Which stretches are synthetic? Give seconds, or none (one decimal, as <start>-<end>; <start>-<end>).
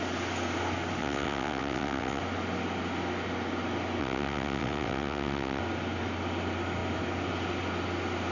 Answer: 1.0-2.2; 4.0-5.6